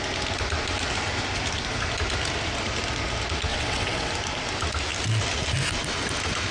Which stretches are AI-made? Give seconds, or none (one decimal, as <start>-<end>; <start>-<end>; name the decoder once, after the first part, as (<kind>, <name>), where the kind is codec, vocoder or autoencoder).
3.5-4.1 (vocoder, WaveNeXt)